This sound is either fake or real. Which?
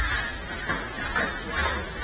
real